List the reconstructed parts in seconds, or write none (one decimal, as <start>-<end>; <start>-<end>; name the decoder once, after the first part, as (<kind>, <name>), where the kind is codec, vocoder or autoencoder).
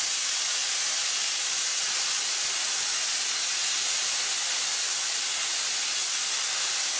0.0-0.6 (vocoder, BigVGAN v2); 4.8-7.0